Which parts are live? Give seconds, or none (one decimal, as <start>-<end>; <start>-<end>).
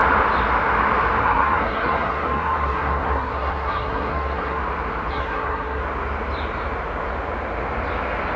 0.0-1.2; 4.6-5.1; 5.8-8.4